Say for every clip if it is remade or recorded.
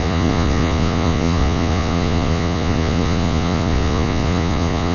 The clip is remade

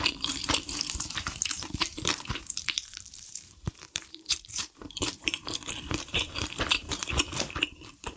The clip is remade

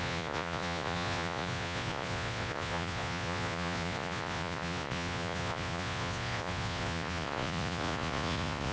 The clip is remade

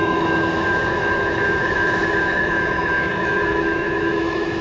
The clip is remade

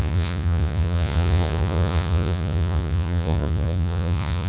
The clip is remade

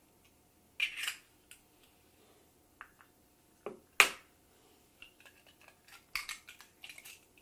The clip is recorded